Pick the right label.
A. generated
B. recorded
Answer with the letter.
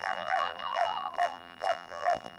A